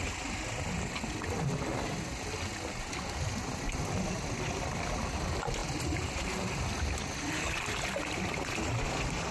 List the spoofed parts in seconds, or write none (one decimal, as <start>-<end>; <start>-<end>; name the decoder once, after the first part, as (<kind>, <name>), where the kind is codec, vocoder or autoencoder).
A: none